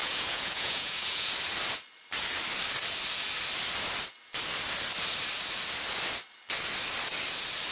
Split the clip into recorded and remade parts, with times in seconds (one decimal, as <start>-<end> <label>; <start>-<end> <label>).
0.0-1.3 remade; 1.3-7.7 recorded